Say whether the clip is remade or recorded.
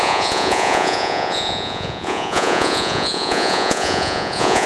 remade